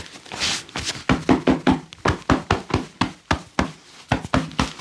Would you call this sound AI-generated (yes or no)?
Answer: no